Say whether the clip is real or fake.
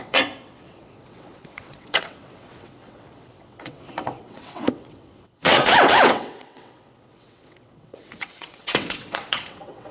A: fake